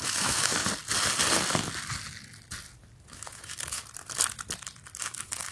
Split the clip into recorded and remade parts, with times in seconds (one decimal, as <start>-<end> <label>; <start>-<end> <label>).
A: 0.0-0.5 remade; 0.5-3.1 recorded; 3.1-3.8 remade; 3.8-5.0 recorded; 5.0-5.5 remade